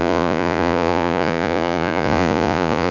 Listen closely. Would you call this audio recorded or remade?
remade